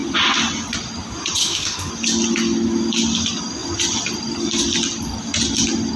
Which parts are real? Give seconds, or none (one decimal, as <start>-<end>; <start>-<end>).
0.0-1.4; 1.9-6.0